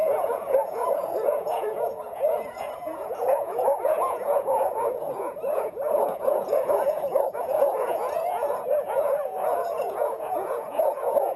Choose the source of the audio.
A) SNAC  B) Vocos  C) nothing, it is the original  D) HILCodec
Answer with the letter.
B